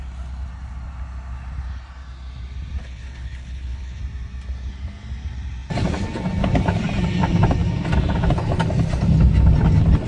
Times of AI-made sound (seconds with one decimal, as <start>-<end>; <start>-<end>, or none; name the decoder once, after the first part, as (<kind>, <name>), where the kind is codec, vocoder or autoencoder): 2.8-4.0 (codec, HILCodec)

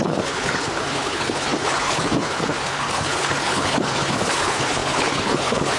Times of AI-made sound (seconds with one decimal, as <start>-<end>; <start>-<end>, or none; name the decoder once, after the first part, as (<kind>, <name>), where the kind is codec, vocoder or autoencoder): 0.0-5.8 (codec, HILCodec)

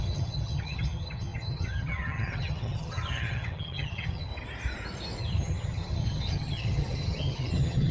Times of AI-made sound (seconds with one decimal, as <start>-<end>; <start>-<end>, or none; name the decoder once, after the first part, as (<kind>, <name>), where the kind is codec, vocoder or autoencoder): 0.0-4.3 (vocoder, HiFi-GAN); 5.2-7.9

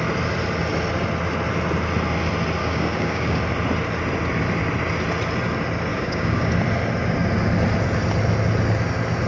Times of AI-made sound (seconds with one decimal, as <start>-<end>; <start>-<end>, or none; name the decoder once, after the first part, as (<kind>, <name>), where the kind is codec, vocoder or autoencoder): 2.6-3.4 (codec, DAC); 5.9-6.5

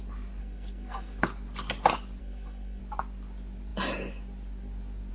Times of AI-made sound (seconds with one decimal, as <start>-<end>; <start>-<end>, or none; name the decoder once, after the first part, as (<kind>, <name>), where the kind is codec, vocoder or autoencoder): 0.4-1.2 (codec, SNAC); 2.2-2.8

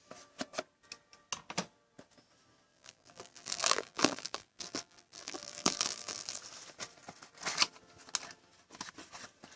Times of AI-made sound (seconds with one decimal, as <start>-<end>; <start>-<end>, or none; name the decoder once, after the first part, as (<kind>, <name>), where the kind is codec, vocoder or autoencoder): 2.7-6.4 (vocoder, BigVGAN v2)